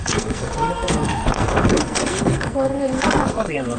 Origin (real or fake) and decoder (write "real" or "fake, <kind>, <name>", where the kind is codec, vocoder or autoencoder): fake, codec, SNAC